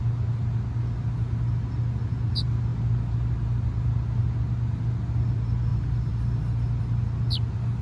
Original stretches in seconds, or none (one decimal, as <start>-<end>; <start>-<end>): 0.0-5.7; 6.3-7.8